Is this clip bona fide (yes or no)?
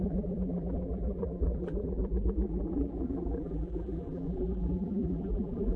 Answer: no